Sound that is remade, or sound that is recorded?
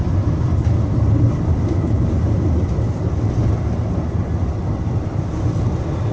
recorded